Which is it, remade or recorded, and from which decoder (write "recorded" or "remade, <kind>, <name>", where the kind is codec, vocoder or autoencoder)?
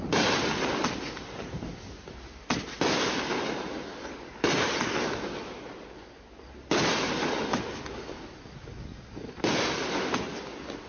recorded